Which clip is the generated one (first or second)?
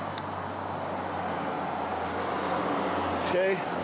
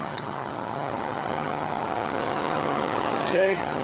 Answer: second